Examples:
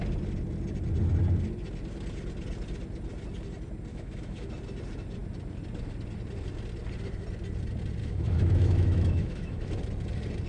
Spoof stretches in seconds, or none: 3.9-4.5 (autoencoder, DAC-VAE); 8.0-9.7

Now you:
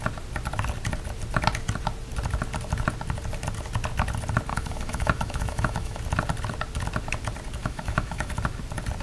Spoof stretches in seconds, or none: 4.5-6.0 (autoencoder, DAC-VAE); 7.6-8.3

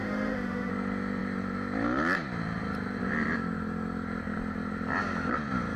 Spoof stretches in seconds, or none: 0.0-0.7 (autoencoder, DAC-VAE)

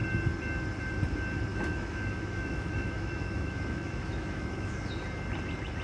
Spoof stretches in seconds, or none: 1.5-4.9 (autoencoder, DAC-VAE)

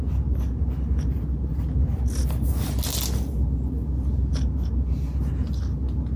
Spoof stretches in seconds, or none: none

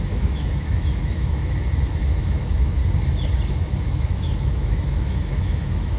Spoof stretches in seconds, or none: 0.0-2.8 (autoencoder, DAC-VAE); 3.5-6.0